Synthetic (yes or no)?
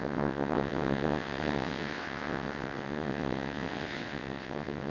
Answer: yes